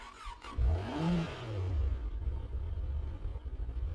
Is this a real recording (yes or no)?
no